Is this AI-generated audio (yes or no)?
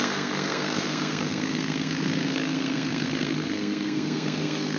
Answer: yes